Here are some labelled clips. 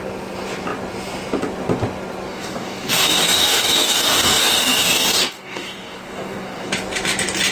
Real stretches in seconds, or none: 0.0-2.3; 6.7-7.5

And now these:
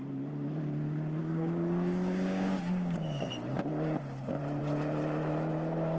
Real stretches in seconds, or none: 0.0-1.2; 3.3-6.0

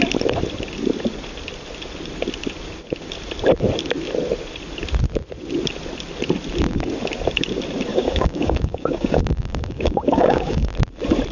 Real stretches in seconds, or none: 0.0-7.9; 10.7-11.3

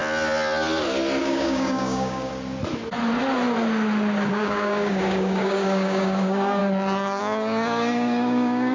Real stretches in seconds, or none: 0.0-1.2; 2.3-4.3; 6.6-7.2

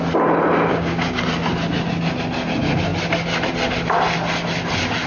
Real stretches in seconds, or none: 0.0-0.7; 1.2-5.1